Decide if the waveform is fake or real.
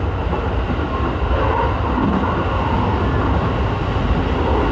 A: real